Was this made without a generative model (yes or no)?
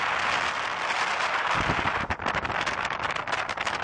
yes